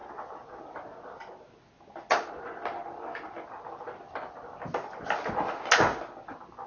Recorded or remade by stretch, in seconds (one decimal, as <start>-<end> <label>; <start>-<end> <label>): 0.0-0.6 remade; 0.6-6.7 recorded